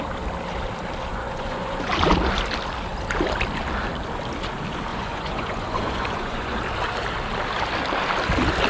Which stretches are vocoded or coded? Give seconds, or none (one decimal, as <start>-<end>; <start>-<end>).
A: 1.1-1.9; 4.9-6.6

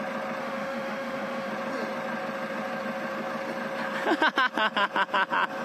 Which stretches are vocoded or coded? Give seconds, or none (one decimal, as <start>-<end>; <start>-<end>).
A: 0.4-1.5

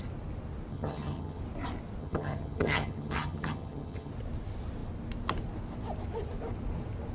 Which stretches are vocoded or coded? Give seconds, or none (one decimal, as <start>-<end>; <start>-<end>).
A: 0.7-1.4; 2.0-4.1